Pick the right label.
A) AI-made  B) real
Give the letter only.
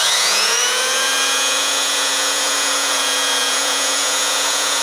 A